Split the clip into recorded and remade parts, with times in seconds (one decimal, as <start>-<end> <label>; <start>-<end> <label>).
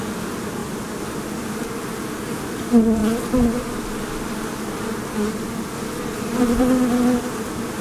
0.0-7.8 recorded